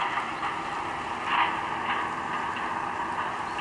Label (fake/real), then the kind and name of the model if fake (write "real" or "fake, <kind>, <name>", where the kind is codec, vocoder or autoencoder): real